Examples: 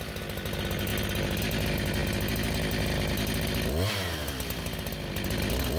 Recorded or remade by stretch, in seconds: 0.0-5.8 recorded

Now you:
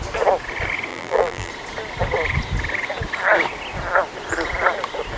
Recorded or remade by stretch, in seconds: 0.0-0.9 recorded; 0.9-1.5 remade; 1.5-5.2 recorded

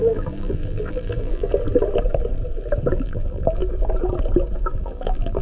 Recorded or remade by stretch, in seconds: 0.0-1.5 remade; 1.5-2.9 recorded; 2.9-3.6 remade; 3.6-4.6 recorded; 4.6-5.4 remade

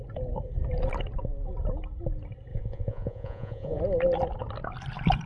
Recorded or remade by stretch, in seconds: 0.0-2.5 recorded; 2.5-3.8 remade; 3.8-5.3 recorded

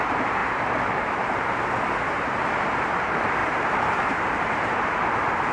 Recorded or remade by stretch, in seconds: 0.0-0.4 remade; 0.4-2.1 recorded; 2.1-5.5 remade

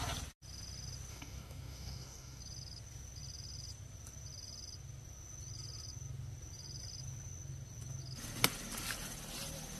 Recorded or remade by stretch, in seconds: 0.0-1.1 recorded; 1.1-2.4 remade; 2.4-9.8 recorded

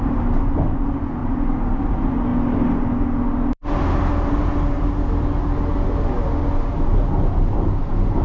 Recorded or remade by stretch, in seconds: 0.0-1.2 recorded; 1.2-1.8 remade; 1.8-8.2 recorded

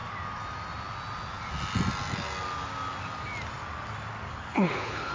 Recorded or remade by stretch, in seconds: 0.0-4.3 recorded; 4.3-5.1 remade